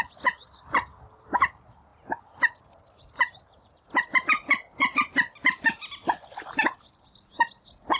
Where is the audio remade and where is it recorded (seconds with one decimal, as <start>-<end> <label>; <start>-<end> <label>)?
0.0-8.0 recorded